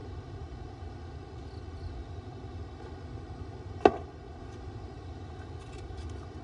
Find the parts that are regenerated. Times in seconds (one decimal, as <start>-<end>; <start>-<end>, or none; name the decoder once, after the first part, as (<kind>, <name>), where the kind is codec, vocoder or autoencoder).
none